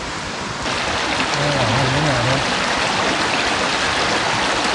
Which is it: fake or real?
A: real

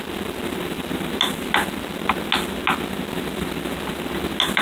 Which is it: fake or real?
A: real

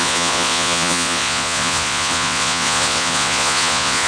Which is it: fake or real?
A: fake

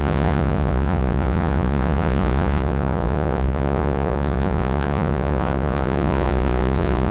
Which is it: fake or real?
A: fake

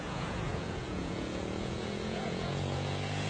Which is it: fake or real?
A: fake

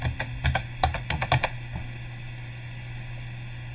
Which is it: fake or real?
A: real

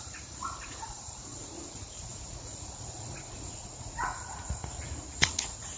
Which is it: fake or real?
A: fake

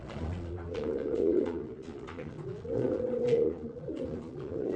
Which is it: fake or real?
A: fake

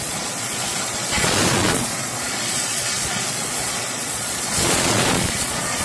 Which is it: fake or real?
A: fake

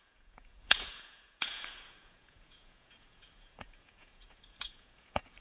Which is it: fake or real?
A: fake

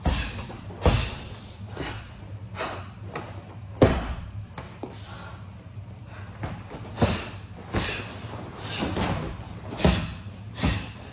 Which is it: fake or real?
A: real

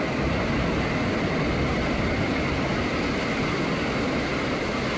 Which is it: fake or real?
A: real